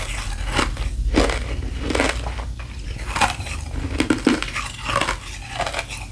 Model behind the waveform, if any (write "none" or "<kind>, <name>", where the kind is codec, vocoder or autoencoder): none